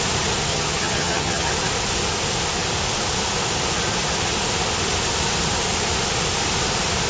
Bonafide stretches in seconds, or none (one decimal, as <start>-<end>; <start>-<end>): 0.0-0.5; 1.5-7.1